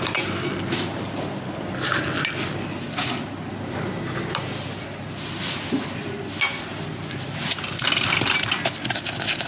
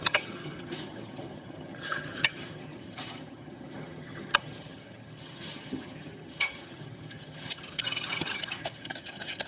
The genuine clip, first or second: first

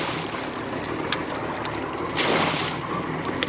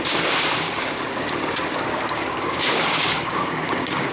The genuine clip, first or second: first